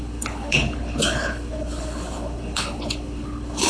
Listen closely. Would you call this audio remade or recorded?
remade